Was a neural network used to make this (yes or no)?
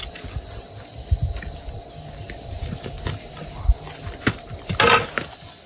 no